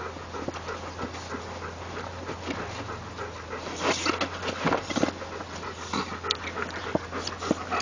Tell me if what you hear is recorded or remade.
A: recorded